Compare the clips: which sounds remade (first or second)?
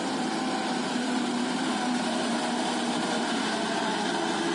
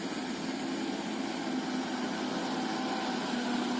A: first